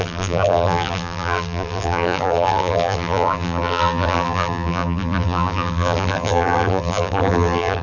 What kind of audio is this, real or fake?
fake